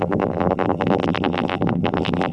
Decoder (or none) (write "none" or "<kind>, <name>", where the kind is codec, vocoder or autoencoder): vocoder, BigVGAN v2